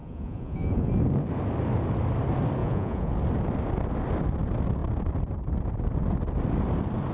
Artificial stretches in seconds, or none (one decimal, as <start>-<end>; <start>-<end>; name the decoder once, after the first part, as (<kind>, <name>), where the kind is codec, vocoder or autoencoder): 0.0-0.9 (vocoder, Vocos); 2.6-3.1